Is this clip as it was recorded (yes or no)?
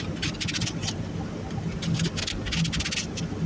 yes